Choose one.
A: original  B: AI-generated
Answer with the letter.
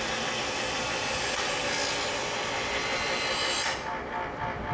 A